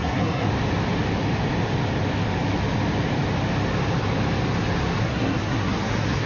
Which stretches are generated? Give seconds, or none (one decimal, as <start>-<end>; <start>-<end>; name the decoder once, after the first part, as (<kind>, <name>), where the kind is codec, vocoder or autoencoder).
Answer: 0.0-0.5 (codec, SNAC); 5.0-6.3